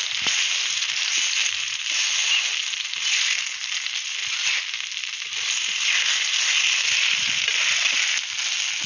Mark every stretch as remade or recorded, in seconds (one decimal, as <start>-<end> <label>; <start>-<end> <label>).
0.0-1.4 recorded; 1.4-2.1 remade; 2.1-8.9 recorded